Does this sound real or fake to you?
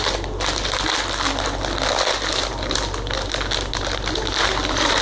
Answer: real